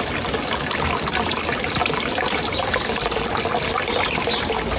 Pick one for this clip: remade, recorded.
recorded